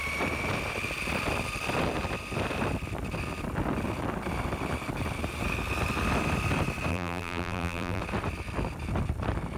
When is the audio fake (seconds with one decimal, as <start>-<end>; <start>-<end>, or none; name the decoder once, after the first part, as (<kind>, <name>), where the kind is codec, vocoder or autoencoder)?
6.9-8.0 (vocoder, BigVGAN v2)

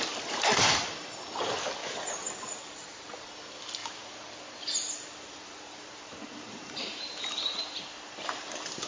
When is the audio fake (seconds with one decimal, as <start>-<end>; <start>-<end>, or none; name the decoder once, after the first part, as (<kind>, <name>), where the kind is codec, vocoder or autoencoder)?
1.8-3.2 (vocoder, BigVGAN v2); 5.4-7.8

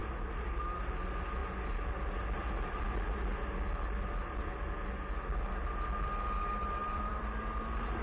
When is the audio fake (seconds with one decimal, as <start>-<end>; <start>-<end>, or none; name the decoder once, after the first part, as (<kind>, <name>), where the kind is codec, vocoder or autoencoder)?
6.8-7.3 (vocoder, BigVGAN v2)

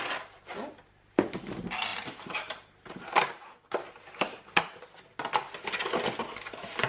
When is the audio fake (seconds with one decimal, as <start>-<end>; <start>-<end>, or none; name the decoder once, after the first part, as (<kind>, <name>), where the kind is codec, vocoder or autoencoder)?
1.9-4.8 (vocoder, BigVGAN v2)

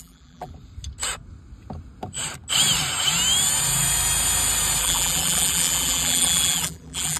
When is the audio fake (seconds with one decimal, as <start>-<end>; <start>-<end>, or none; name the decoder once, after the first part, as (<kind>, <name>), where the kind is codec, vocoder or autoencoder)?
0.0-0.5 (vocoder, BigVGAN v2); 4.8-7.2

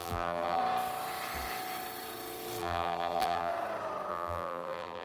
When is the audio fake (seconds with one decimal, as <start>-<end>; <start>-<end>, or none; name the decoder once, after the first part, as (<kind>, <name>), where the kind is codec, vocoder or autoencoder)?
0.0-0.6 (vocoder, BigVGAN v2); 2.6-3.5; 4.1-5.0